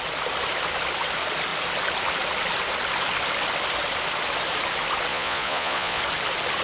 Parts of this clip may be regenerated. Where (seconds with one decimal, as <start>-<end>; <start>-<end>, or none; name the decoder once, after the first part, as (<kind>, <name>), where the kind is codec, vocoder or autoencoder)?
5.1-6.0 (vocoder, Vocos)